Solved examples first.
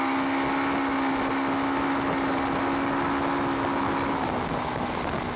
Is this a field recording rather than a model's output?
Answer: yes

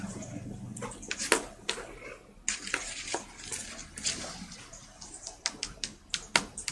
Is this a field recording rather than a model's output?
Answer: yes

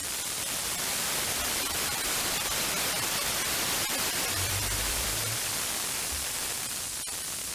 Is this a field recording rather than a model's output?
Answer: no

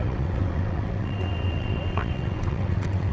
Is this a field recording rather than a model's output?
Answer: no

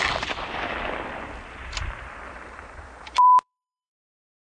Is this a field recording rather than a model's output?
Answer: no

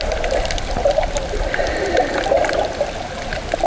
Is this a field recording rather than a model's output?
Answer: yes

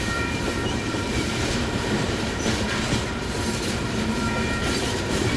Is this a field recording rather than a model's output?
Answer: no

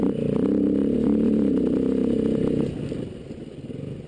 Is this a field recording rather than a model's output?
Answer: yes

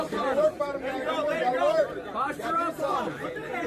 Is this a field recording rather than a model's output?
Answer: no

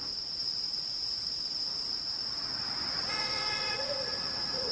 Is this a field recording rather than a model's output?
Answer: no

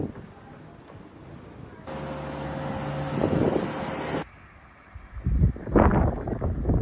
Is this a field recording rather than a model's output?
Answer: yes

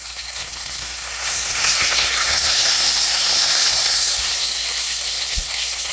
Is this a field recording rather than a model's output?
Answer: no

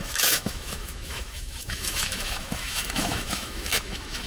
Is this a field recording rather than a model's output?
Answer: no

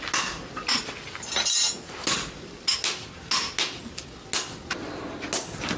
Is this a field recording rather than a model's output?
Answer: yes